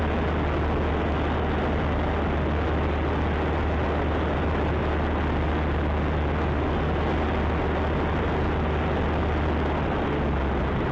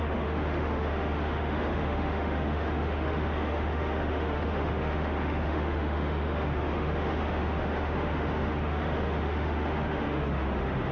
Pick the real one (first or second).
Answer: first